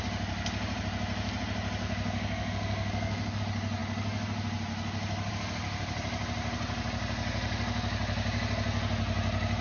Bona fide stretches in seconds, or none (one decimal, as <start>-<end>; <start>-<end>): 0.0-1.8; 3.4-9.6